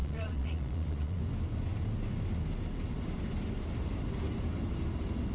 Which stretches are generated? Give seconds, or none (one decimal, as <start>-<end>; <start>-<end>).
0.0-1.2